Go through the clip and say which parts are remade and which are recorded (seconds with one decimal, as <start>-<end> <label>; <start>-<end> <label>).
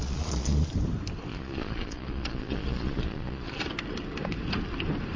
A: 0.0-0.7 remade; 0.7-1.3 recorded; 1.3-3.6 remade; 3.6-5.2 recorded